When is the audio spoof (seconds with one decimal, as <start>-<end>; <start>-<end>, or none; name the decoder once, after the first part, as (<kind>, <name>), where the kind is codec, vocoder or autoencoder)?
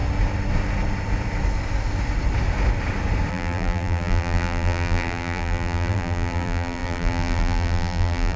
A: 3.3-8.4 (vocoder, BigVGAN v2)